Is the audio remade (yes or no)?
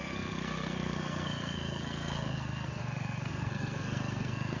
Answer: yes